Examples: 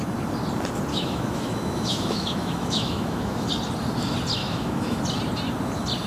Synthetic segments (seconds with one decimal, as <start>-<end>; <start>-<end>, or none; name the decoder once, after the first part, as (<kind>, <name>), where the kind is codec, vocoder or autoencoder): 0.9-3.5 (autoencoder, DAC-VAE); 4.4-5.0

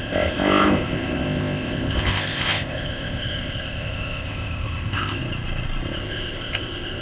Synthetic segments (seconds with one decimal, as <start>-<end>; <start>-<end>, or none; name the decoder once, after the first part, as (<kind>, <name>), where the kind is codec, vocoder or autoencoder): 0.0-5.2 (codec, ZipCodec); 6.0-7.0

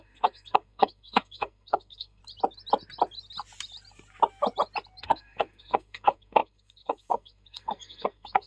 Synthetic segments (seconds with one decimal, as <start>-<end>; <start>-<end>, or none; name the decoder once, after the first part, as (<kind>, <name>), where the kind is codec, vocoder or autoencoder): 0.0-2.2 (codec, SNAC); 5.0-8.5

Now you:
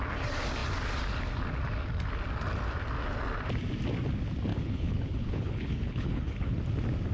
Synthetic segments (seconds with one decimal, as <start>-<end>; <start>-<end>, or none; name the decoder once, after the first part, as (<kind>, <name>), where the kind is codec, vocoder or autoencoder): 4.5-6.6 (codec, HILCodec)

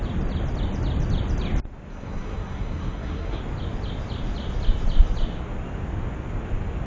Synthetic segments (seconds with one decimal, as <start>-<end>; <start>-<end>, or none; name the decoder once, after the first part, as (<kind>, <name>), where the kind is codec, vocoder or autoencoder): 1.9-3.4 (codec, SNAC)

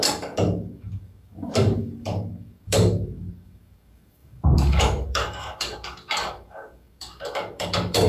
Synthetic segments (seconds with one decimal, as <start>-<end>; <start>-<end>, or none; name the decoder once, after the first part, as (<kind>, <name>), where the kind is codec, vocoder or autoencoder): 0.0-8.1 (codec, DAC)

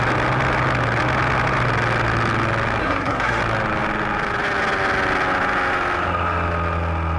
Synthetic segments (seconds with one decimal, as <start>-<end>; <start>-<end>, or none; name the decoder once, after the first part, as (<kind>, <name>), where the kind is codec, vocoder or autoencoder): 2.8-3.4 (codec, SNAC)

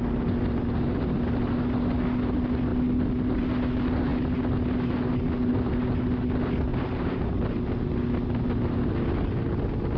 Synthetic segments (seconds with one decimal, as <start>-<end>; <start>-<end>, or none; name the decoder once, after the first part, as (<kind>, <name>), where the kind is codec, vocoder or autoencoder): 6.7-7.3 (vocoder, BigVGAN v2)